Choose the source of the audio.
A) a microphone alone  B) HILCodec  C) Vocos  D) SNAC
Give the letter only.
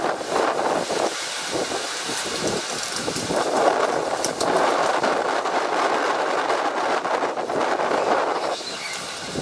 A